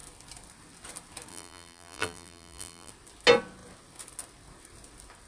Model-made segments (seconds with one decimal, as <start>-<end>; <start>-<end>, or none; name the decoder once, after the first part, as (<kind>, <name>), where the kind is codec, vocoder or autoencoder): 1.3-2.9 (vocoder, BigVGAN v2)